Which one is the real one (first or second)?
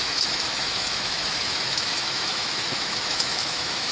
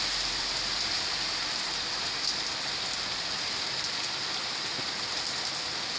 second